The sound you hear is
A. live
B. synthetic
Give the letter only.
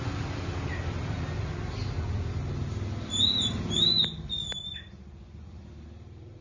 A